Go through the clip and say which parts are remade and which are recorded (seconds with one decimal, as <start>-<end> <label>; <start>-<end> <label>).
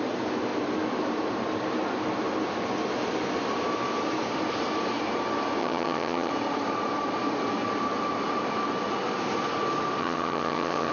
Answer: 0.0-5.6 recorded; 5.6-6.3 remade; 6.3-10.0 recorded; 10.0-10.9 remade